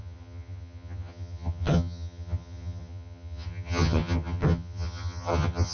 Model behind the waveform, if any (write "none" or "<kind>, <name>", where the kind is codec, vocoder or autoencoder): vocoder, HiFi-GAN